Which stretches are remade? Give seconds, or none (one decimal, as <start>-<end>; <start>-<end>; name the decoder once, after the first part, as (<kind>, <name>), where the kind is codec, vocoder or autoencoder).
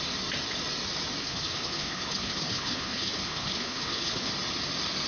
1.2-4.3 (codec, HILCodec)